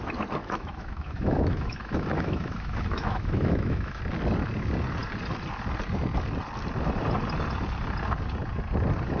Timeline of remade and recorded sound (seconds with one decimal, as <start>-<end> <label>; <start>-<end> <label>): 0.0-0.4 recorded; 0.4-4.0 remade; 4.0-9.2 recorded